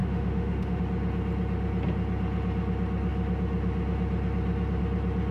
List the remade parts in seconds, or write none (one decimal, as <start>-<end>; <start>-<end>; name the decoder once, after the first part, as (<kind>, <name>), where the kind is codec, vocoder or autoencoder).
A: 0.0-0.8 (autoencoder, DAC-VAE)